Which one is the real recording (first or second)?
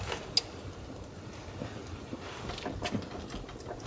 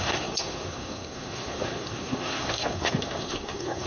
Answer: first